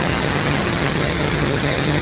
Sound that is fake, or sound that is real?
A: fake